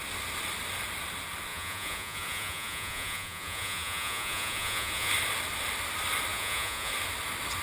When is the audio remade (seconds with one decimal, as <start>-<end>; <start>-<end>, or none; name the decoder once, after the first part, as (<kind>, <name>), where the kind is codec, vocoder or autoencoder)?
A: 1.5-5.1 (vocoder, Vocos); 6.3-6.9